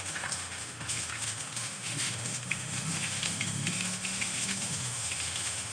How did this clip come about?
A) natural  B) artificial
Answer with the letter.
B